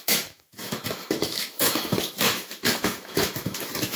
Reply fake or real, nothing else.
fake